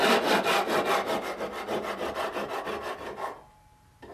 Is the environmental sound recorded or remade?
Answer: recorded